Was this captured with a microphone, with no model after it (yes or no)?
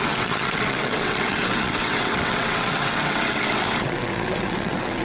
no